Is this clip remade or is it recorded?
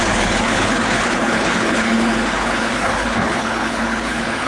remade